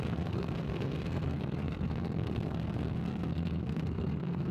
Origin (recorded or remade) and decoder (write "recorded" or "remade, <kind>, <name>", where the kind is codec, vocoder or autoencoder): remade, codec, SNAC